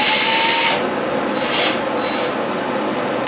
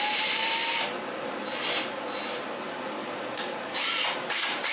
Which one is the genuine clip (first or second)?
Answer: first